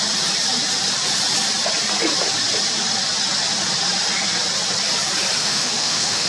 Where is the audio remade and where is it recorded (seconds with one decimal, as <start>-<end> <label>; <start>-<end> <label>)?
0.0-5.4 recorded; 5.4-6.3 remade